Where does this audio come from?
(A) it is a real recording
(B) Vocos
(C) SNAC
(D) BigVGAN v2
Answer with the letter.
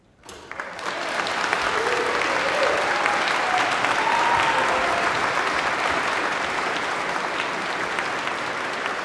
A